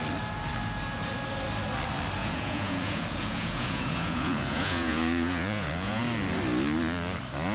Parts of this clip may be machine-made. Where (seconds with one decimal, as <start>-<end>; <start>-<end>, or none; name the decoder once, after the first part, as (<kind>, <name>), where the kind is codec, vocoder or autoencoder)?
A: 2.2-6.0 (vocoder, Vocos)